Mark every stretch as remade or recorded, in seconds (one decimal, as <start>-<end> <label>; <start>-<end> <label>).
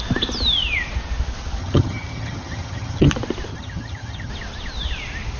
0.0-1.6 recorded; 1.6-3.1 remade; 3.1-3.5 recorded; 3.5-4.3 remade; 4.3-5.4 recorded